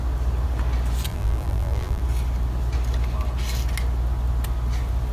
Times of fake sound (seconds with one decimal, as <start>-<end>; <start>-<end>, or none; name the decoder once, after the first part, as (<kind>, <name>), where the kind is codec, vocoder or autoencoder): 1.1-2.0 (vocoder, BigVGAN v2)